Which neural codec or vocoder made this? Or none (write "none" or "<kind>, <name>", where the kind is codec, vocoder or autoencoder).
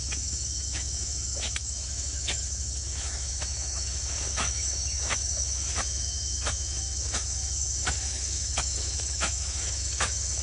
autoencoder, DAC-VAE